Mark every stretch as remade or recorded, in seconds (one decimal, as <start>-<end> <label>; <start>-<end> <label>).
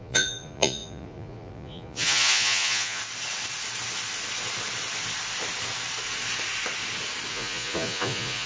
0.0-3.0 remade; 3.0-7.3 recorded; 7.3-8.5 remade